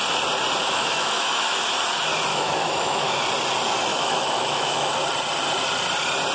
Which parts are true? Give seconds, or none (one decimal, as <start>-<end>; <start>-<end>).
0.0-0.6; 1.7-2.3; 3.2-3.9; 4.9-6.3

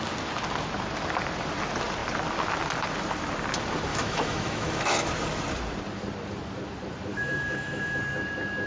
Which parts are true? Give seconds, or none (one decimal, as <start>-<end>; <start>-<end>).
0.0-3.9; 5.1-7.1; 8.0-8.7

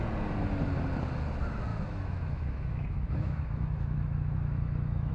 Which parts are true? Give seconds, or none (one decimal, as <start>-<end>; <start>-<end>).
0.0-1.7

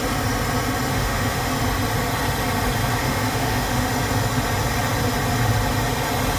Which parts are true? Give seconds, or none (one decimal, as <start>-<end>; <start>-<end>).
0.0-0.9; 1.5-3.0; 3.9-6.4

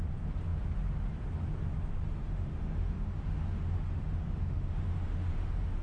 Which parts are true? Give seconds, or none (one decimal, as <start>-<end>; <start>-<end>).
0.0-2.2

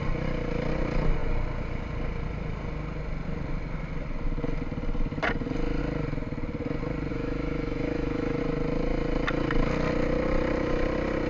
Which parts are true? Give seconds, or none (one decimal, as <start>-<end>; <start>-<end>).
0.0-7.1; 8.4-11.3

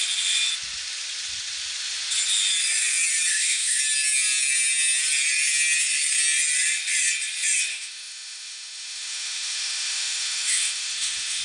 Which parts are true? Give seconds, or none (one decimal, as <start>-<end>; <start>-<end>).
0.0-3.3; 3.8-7.7

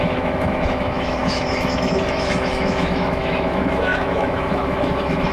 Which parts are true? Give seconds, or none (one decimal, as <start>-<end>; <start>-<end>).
none